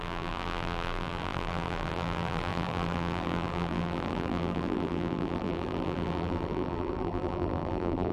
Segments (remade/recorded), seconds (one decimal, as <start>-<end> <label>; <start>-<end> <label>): 0.0-8.1 remade